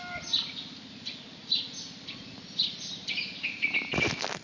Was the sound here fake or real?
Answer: real